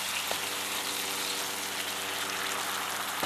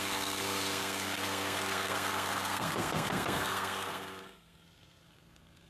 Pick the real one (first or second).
first